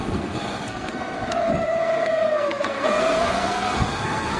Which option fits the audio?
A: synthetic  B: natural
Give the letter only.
A